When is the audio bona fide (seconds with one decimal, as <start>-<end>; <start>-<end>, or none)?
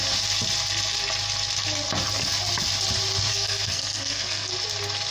0.0-3.3; 4.5-5.1